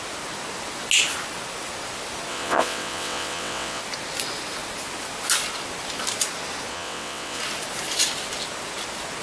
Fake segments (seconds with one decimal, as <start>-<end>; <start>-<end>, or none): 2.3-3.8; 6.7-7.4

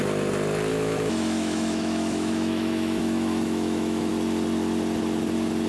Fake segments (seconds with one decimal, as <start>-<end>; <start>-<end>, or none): 0.7-4.1

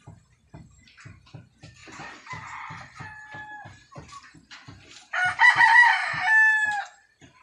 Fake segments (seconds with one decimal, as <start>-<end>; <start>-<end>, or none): none

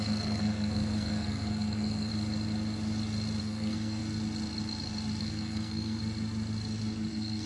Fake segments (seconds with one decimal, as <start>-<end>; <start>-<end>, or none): 0.0-2.1; 3.4-4.0; 5.2-6.0; 7.1-7.5

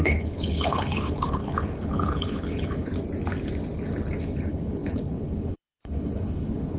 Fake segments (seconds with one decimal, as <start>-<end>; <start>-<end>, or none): 0.0-2.9; 4.2-6.8

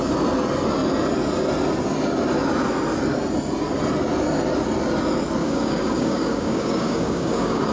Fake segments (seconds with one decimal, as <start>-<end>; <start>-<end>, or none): 5.4-7.7

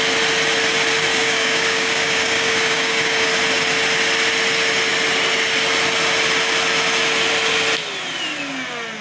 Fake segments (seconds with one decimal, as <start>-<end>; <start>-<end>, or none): 1.1-3.3